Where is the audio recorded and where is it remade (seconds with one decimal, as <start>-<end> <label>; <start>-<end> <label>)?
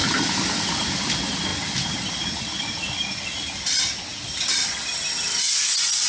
0.0-1.1 remade; 1.1-1.5 recorded; 1.5-3.5 remade; 3.5-4.1 recorded; 4.1-4.7 remade; 4.7-6.1 recorded